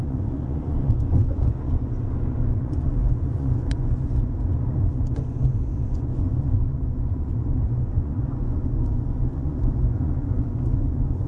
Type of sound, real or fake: fake